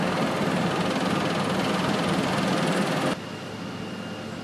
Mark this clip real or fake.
real